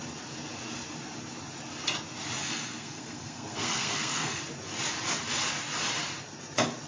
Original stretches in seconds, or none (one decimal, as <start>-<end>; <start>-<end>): 0.0-2.4; 4.4-6.9